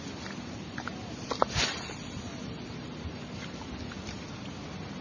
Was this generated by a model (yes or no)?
no